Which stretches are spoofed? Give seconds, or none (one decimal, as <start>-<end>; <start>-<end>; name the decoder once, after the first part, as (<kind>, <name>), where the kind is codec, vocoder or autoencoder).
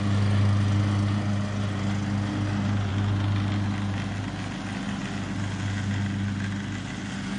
none